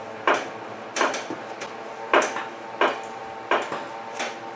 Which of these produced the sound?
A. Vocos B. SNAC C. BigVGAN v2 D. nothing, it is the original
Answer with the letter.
D